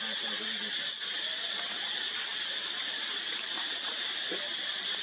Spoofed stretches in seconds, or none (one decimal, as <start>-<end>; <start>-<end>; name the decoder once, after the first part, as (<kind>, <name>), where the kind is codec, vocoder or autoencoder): 2.3-4.6 (vocoder, BigVGAN v2)